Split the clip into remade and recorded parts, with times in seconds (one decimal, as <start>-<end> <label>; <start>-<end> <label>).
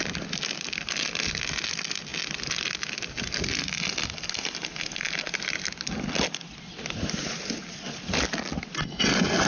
0.0-9.5 recorded